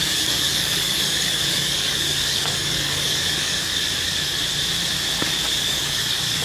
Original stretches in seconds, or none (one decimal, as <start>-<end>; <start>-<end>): 4.4-5.4